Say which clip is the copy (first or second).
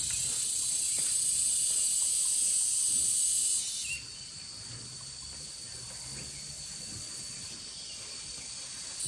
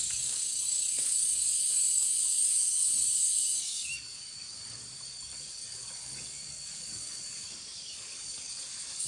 second